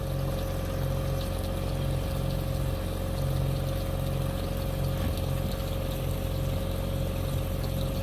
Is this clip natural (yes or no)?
yes